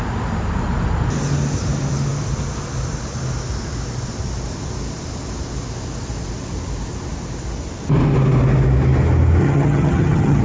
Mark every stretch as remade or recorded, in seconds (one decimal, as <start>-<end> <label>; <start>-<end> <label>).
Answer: 0.0-9.4 recorded; 9.4-10.4 remade